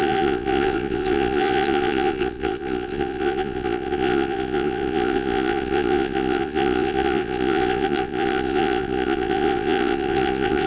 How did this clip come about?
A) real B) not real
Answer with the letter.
B